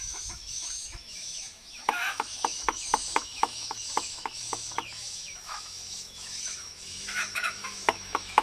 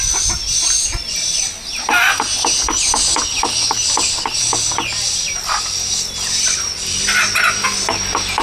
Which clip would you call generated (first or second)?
first